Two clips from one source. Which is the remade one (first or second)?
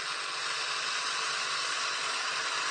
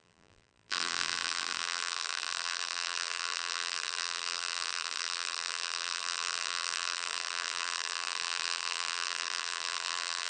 second